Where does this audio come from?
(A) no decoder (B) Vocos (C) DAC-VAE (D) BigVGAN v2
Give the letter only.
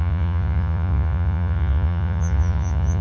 B